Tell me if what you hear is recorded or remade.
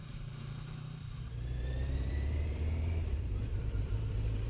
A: remade